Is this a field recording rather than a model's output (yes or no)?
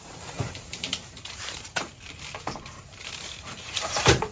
no